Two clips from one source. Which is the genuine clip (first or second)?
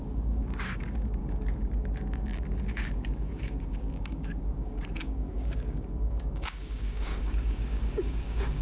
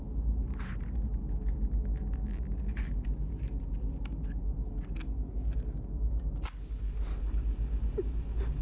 second